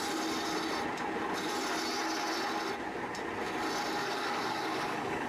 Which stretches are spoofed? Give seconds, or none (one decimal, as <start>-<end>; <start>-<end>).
4.0-5.3